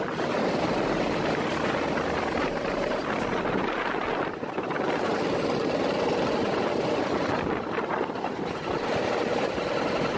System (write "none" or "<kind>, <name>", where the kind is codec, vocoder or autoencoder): vocoder, BigVGAN v2